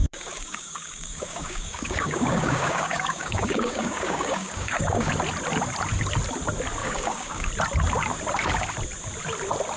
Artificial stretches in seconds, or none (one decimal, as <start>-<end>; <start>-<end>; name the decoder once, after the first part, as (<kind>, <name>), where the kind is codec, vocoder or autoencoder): 0.0-5.1 (codec, DAC); 6.8-7.5